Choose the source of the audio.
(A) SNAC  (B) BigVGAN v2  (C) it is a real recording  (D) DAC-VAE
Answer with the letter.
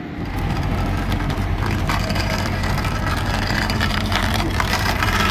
B